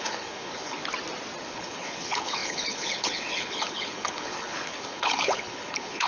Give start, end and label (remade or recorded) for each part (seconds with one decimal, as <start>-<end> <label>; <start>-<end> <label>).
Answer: 0.0-0.8 remade; 0.8-1.4 recorded; 1.4-6.1 remade